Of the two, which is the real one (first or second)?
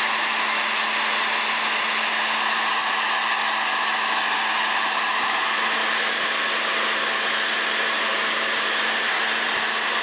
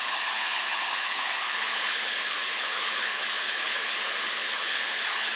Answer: first